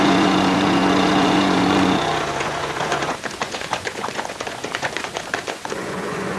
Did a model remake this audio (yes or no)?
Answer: yes